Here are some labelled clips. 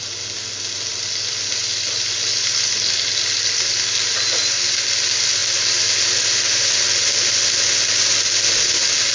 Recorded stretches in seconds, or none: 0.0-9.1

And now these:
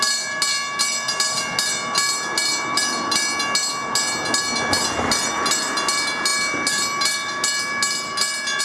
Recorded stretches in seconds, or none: 0.0-8.6